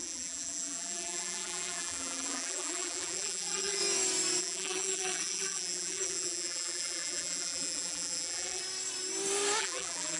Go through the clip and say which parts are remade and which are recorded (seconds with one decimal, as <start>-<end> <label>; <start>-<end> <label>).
0.0-3.8 remade; 3.8-4.4 recorded; 4.4-8.6 remade; 8.6-9.6 recorded; 9.6-10.2 remade